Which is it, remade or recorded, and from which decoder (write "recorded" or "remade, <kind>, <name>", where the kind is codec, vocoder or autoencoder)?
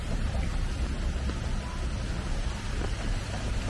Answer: recorded